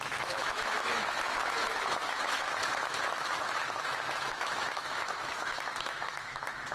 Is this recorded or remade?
remade